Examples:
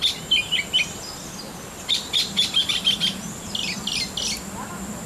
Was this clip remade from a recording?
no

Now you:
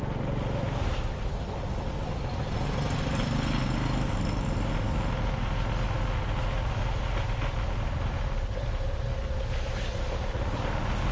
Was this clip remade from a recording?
no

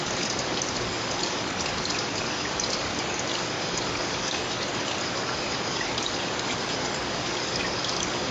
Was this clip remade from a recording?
yes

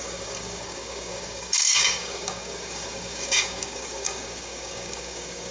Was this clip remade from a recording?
yes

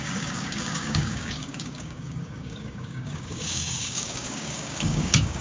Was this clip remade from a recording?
yes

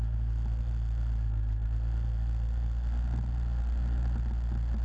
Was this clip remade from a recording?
no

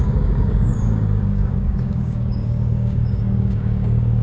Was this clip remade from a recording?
yes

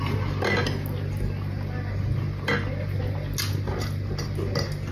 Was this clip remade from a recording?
no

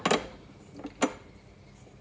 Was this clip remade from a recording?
no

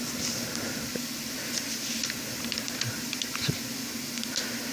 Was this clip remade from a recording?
no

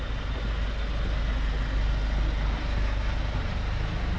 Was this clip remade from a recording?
no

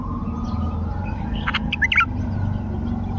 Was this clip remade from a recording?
no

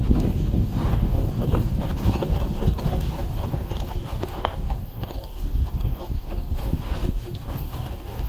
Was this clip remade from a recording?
yes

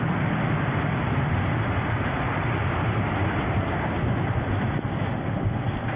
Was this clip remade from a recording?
no